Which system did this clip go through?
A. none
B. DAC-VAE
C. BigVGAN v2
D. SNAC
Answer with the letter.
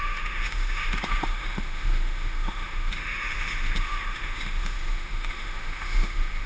B